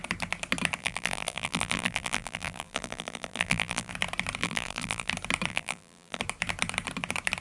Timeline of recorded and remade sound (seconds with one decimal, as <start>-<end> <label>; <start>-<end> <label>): 0.0-0.8 recorded; 0.8-3.9 remade; 3.9-4.4 recorded; 4.4-5.1 remade; 5.1-5.5 recorded; 5.5-6.2 remade; 6.2-7.4 recorded